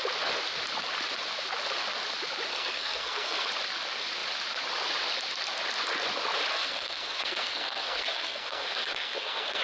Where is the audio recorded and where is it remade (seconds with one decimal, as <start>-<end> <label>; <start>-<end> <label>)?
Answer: 0.0-2.5 recorded; 2.5-3.5 remade; 3.5-6.5 recorded; 6.5-9.6 remade